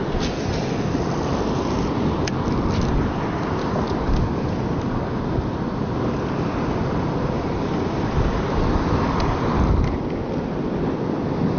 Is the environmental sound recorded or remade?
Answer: recorded